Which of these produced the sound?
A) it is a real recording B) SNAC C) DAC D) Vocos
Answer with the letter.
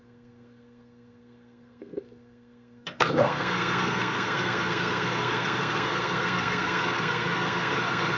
B